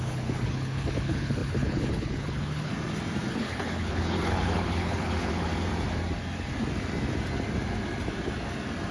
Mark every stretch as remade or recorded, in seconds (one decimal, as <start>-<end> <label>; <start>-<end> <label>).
0.0-2.7 remade; 2.7-3.3 recorded; 3.3-5.5 remade; 5.5-8.9 recorded